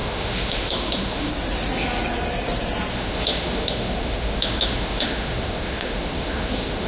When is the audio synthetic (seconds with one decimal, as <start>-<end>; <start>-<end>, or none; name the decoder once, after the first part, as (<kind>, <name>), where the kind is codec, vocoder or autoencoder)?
0.0-1.3 (autoencoder, DAC-VAE); 2.9-6.9